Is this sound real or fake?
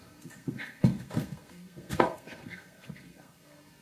fake